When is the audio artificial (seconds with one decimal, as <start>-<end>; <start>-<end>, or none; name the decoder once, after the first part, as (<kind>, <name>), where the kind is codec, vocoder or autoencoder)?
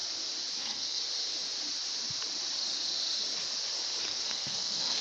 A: 0.6-1.0 (codec, SNAC); 4.0-5.0